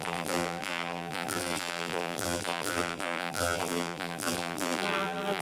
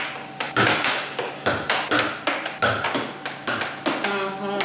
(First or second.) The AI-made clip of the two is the first